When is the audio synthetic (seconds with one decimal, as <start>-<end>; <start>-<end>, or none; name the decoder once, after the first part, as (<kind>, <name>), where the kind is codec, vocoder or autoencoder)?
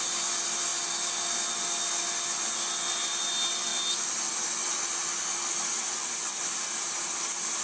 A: 3.7-5.2 (vocoder, BigVGAN v2)